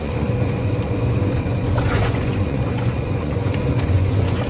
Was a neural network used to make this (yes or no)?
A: yes